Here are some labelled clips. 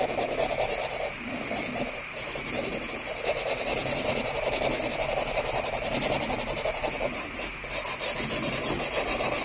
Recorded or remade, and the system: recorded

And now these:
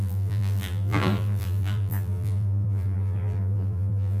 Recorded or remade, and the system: remade, vocoder, BigVGAN v2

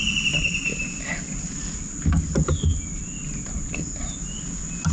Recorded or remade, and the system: recorded